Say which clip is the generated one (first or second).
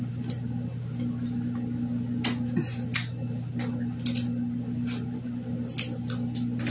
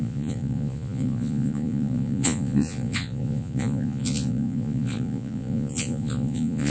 second